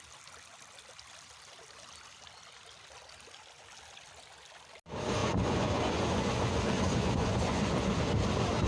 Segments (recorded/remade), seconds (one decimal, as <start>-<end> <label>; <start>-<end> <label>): 0.0-5.2 recorded; 5.2-8.0 remade; 8.0-8.7 recorded